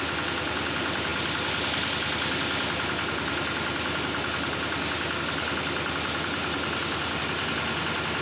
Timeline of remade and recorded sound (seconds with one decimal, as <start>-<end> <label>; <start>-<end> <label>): 0.0-8.2 recorded